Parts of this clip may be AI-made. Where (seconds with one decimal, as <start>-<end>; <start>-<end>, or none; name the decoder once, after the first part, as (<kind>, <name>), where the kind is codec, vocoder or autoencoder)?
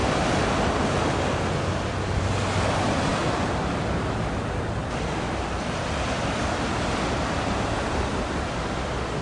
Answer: none